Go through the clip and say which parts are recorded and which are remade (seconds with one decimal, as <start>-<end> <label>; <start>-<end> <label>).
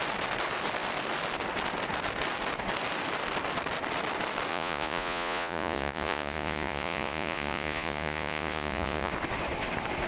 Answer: 0.0-4.5 recorded; 4.5-9.1 remade; 9.1-10.1 recorded